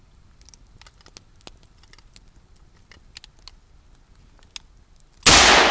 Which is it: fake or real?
real